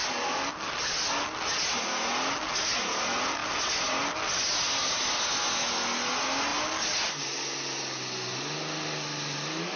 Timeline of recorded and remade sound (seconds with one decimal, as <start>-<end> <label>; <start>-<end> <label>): 0.0-9.8 recorded